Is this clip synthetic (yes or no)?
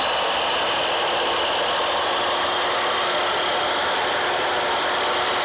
no